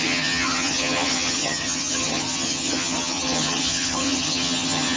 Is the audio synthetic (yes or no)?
yes